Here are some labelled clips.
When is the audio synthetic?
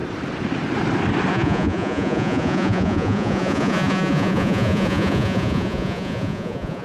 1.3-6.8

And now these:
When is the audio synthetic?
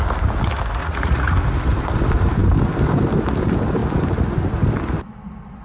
0.8-1.3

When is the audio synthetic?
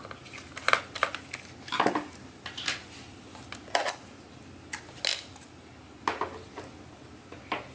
none